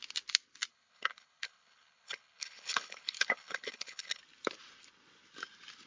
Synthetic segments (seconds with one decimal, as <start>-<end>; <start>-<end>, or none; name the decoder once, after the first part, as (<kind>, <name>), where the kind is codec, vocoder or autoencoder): 0.7-4.2 (codec, HILCodec)